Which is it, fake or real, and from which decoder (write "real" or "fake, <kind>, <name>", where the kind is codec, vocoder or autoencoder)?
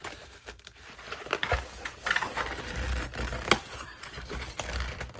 real